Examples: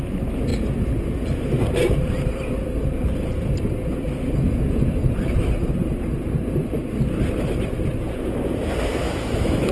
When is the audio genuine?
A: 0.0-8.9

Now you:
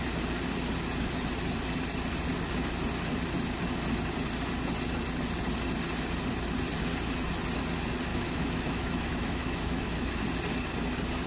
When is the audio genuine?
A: 0.0-8.1; 10.1-11.3

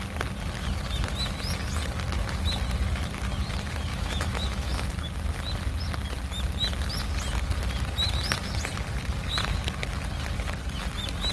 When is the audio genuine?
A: 0.0-3.9; 4.9-11.3

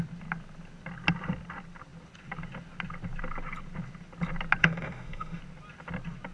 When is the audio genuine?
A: 0.0-4.6; 5.4-6.3

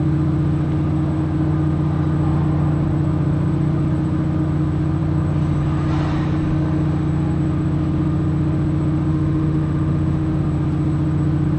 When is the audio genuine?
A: 0.0-9.1; 10.4-11.6

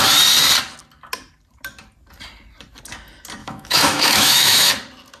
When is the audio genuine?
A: 0.0-3.4; 4.7-5.2

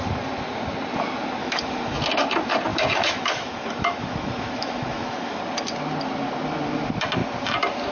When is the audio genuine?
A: 0.0-1.4; 2.0-2.7; 5.4-7.9

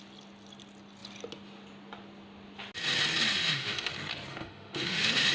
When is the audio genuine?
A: 0.0-3.3; 3.9-4.3